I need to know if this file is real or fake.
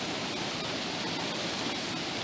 real